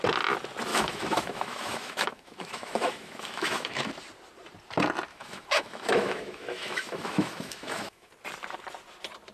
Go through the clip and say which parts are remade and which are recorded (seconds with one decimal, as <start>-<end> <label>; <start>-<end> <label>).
0.0-0.7 recorded; 0.7-3.9 remade; 3.9-5.1 recorded; 5.1-8.1 remade; 8.1-9.3 recorded